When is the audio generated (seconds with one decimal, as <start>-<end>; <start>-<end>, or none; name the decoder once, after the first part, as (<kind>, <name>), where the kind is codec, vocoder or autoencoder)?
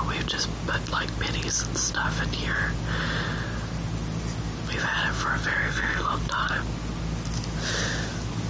5.6-6.1 (codec, SNAC)